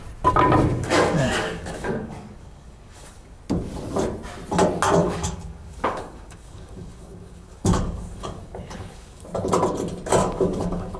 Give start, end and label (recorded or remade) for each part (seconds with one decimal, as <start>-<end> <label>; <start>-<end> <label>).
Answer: 0.0-0.7 recorded; 0.7-3.4 remade; 3.4-5.0 recorded; 5.0-9.2 remade; 9.2-10.2 recorded; 10.2-11.0 remade